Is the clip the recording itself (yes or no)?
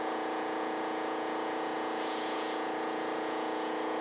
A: no